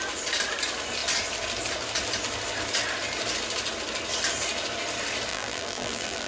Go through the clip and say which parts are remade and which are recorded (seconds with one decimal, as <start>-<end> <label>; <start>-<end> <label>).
0.0-5.3 recorded; 5.3-6.3 remade